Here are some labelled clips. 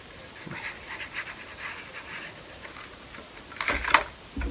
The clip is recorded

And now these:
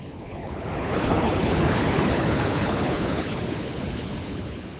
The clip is remade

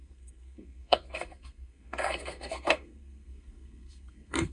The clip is remade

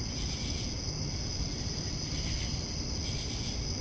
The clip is recorded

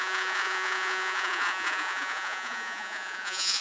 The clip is remade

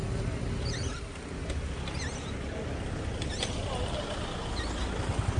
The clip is recorded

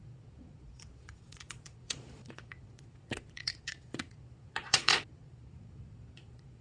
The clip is remade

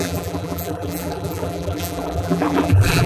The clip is remade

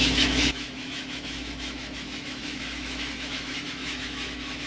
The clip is remade